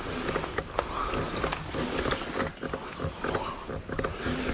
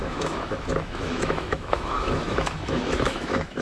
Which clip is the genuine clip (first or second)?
first